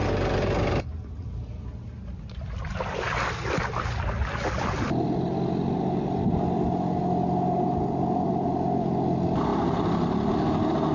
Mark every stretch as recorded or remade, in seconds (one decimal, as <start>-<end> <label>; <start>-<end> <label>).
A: 0.0-9.5 recorded; 9.5-10.3 remade; 10.3-10.9 recorded

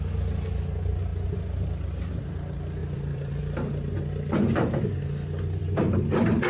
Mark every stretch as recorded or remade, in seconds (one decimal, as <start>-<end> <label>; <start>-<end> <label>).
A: 0.0-2.8 recorded; 2.8-3.4 remade; 3.4-6.5 recorded

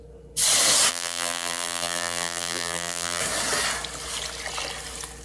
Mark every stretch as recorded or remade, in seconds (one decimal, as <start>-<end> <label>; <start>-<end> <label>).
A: 0.0-0.9 recorded; 0.9-3.2 remade; 3.2-5.2 recorded

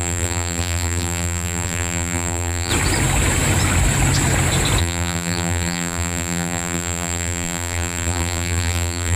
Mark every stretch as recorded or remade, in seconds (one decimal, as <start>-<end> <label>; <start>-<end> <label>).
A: 0.0-2.7 remade; 2.7-4.8 recorded; 4.8-9.2 remade